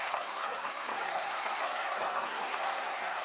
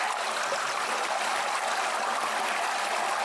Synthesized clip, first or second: first